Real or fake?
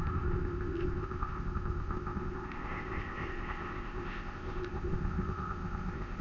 fake